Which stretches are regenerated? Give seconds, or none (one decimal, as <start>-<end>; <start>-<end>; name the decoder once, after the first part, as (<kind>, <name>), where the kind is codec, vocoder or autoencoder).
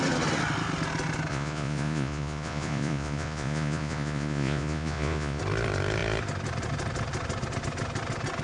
1.3-5.4 (vocoder, Vocos)